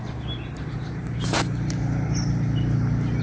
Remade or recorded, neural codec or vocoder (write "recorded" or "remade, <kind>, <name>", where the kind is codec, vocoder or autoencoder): recorded